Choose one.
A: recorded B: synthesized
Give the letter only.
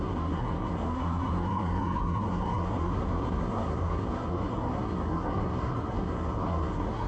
B